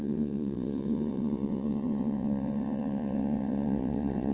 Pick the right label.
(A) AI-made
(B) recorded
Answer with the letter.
A